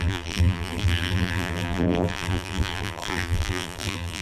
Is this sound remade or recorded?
remade